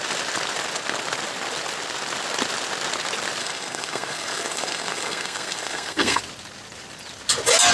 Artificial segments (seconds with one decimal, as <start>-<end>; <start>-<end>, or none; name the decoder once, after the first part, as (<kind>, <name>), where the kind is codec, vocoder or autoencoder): 3.4-6.2 (codec, SNAC)